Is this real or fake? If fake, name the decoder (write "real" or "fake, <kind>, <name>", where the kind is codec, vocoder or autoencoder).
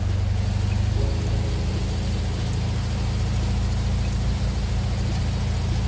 real